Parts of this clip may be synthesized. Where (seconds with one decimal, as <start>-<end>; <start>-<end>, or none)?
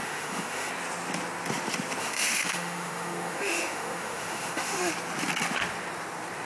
0.0-0.7; 2.0-4.9